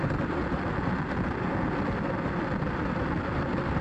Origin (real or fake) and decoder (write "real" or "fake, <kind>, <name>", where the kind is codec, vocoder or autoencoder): real